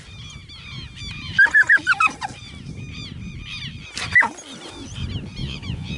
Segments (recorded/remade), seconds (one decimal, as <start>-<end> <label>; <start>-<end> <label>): 0.0-5.4 recorded; 5.4-6.0 remade

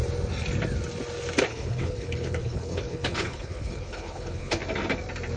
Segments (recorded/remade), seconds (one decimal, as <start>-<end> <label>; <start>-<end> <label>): 0.0-1.5 recorded; 1.5-4.6 remade; 4.6-5.4 recorded

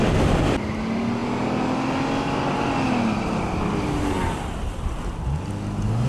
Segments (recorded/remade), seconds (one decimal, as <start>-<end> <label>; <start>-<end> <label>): 0.0-6.1 recorded